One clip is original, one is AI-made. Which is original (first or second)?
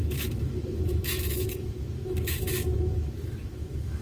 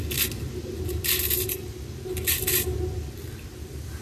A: second